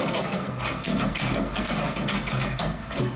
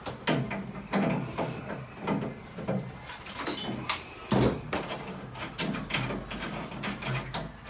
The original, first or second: second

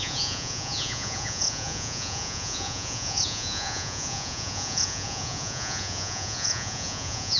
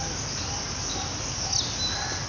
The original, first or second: second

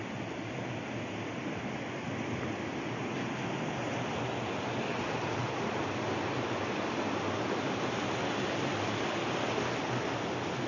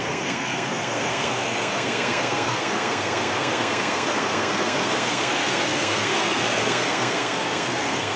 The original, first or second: first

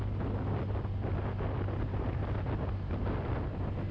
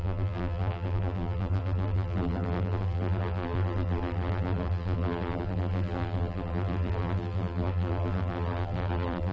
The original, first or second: first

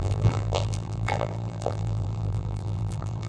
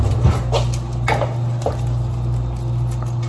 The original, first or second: second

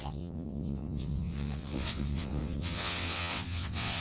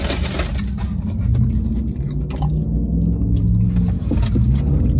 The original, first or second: second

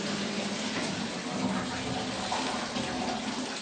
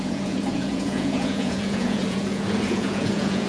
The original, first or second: first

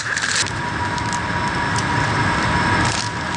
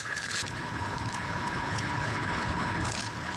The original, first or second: first